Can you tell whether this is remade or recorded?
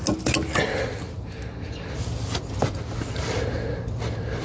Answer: recorded